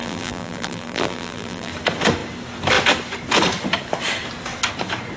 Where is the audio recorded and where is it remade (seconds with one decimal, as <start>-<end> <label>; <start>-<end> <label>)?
0.0-1.7 remade; 1.7-5.2 recorded